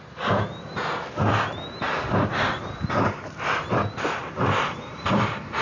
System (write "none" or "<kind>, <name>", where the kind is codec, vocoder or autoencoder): none